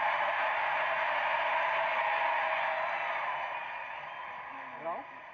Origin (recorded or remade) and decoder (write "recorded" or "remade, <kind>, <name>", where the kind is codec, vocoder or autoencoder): recorded